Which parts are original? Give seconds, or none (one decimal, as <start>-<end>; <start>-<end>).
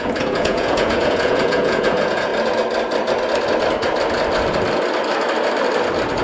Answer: 2.3-6.2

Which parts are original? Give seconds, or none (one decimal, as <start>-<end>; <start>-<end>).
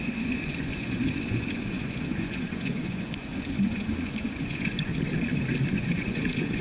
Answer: 4.9-5.7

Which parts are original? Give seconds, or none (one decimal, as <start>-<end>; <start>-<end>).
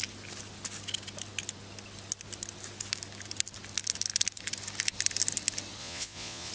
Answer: 0.0-5.8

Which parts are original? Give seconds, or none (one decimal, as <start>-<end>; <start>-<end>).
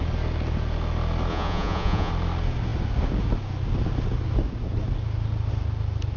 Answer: 0.0-1.3; 2.1-6.2